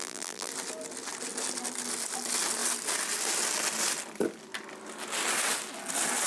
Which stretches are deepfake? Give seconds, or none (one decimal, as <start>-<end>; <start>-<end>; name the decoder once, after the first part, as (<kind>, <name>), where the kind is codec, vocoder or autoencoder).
0.0-0.5 (vocoder, BigVGAN v2)

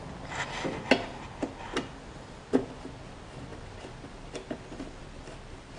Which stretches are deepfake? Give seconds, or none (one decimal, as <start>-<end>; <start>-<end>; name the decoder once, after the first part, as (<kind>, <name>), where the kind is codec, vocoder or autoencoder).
none

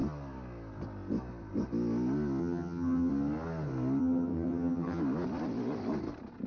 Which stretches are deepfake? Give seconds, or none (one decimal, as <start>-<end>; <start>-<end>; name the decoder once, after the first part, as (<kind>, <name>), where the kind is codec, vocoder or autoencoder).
2.4-3.1 (vocoder, HiFi-GAN); 4.0-5.0

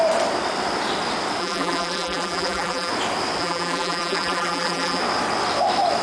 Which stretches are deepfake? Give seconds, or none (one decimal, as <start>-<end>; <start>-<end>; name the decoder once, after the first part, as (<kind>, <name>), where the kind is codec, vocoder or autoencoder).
1.4-2.9 (vocoder, BigVGAN v2); 3.4-5.0

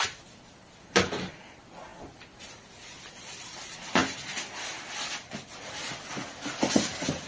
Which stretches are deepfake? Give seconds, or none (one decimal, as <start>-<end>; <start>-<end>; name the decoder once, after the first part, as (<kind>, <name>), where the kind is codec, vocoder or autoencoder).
none

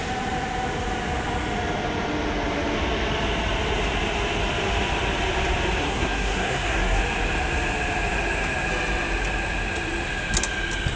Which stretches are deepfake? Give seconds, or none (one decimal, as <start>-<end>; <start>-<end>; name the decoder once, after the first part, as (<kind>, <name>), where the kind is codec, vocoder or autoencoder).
5.8-7.0 (codec, SNAC)

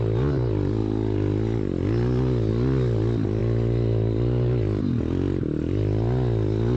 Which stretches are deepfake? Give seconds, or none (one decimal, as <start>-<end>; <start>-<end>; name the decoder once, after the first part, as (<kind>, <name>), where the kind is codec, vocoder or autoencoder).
none

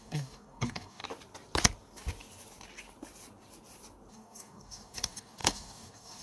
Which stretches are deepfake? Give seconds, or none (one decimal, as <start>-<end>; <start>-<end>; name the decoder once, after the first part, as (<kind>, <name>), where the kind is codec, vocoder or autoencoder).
0.0-1.0 (codec, DAC); 4.1-6.2